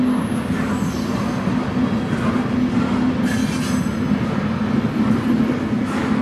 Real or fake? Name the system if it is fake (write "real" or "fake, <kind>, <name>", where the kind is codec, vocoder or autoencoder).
real